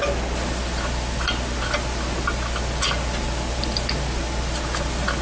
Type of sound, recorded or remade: recorded